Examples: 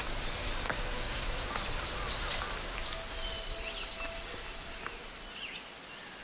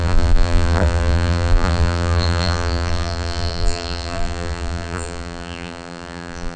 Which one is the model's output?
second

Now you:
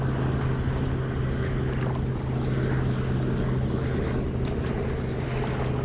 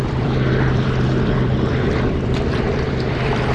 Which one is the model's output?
second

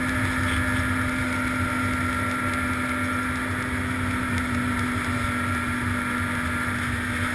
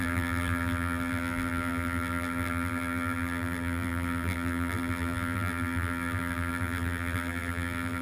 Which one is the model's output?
second